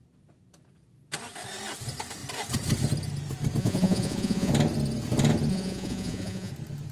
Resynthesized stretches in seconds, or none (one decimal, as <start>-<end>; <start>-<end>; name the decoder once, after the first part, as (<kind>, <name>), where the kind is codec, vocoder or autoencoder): 3.6-4.5 (vocoder, Vocos); 5.5-6.5